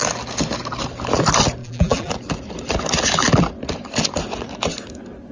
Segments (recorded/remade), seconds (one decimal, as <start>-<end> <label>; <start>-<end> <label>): 0.0-1.6 recorded; 1.6-2.1 remade; 2.1-5.3 recorded